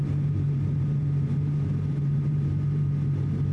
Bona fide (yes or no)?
yes